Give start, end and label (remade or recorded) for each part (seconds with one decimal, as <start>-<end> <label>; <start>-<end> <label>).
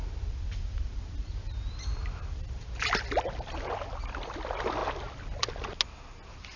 0.0-6.6 recorded